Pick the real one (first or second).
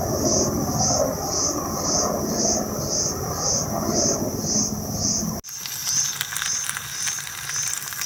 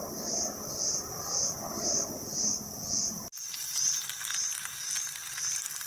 first